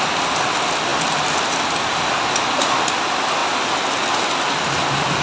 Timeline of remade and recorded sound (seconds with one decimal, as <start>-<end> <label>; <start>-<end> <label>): 0.0-5.2 recorded